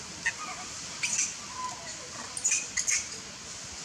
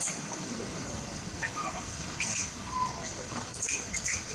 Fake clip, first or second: second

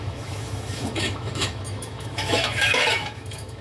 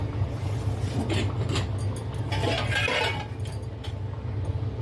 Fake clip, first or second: first